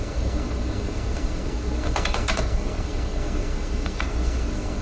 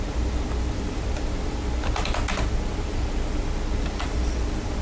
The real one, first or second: second